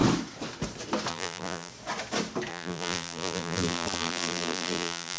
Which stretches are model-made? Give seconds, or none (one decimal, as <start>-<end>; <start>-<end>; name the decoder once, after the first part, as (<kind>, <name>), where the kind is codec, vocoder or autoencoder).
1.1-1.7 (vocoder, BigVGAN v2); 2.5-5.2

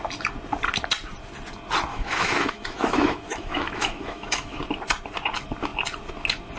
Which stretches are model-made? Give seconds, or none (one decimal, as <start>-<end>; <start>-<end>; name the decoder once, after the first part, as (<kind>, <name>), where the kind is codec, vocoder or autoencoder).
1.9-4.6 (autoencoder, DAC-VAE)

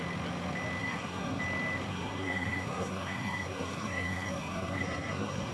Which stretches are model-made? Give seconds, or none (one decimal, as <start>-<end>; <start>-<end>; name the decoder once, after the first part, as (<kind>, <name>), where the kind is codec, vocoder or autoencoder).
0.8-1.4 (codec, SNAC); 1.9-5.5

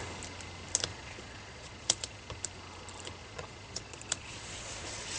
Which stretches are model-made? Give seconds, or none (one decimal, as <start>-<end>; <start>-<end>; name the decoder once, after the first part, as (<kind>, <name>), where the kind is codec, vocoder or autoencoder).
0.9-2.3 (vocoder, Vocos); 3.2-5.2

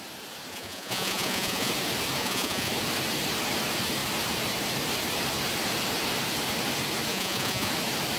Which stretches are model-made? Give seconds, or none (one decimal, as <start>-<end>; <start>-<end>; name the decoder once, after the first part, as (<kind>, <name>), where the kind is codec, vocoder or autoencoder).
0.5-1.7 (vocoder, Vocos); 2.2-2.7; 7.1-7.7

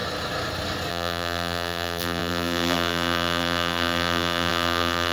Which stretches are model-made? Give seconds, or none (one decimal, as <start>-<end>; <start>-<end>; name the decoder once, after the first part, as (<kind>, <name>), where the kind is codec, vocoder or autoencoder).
0.9-5.1 (vocoder, BigVGAN v2)

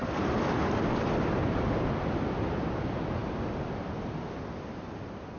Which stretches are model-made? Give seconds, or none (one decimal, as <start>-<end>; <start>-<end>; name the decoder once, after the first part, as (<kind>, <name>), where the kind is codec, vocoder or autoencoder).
none